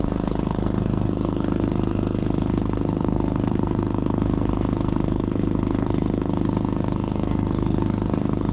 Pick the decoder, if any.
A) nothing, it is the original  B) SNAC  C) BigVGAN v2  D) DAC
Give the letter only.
B